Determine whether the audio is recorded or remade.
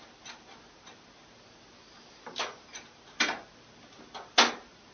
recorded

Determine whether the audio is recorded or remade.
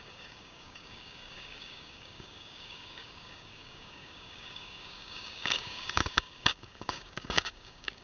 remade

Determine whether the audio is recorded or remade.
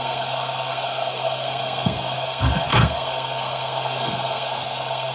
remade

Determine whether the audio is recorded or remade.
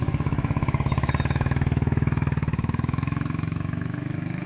remade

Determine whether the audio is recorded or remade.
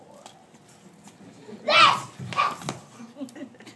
recorded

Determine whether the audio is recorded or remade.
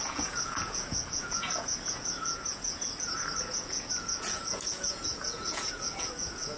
remade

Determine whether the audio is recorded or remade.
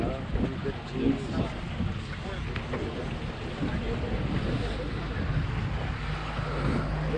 recorded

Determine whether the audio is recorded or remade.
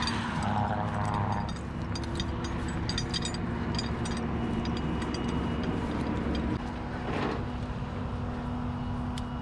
recorded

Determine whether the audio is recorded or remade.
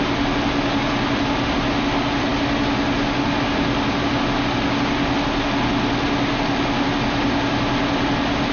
recorded